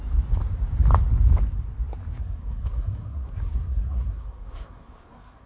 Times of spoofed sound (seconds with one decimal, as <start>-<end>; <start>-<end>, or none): 2.2-5.5